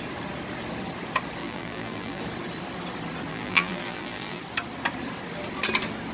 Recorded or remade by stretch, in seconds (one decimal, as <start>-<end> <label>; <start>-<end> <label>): 0.0-1.4 recorded; 1.4-2.2 remade; 2.2-3.3 recorded; 3.3-4.4 remade; 4.4-6.1 recorded